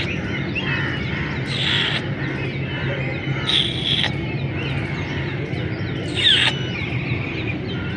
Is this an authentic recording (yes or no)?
yes